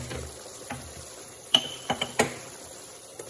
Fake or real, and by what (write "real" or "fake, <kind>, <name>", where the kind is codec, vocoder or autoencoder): fake, vocoder, BigVGAN v2